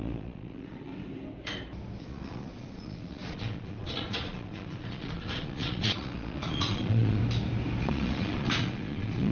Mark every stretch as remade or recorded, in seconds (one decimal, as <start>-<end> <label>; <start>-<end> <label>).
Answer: 0.0-0.9 remade; 0.9-2.0 recorded; 2.0-7.2 remade; 7.2-7.8 recorded; 7.8-9.3 remade